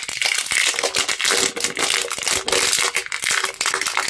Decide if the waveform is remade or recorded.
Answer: recorded